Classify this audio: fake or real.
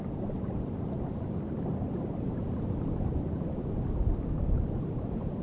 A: real